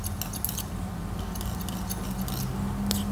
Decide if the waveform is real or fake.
real